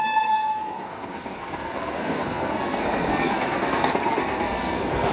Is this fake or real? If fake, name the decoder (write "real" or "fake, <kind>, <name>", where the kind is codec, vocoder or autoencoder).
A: fake, codec, SNAC